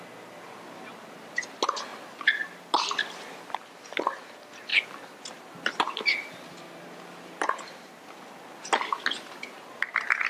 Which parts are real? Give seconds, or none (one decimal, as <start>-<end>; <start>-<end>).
0.0-10.3